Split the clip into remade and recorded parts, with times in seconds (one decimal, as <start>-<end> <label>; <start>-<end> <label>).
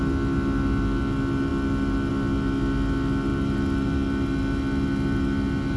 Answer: 0.0-5.8 recorded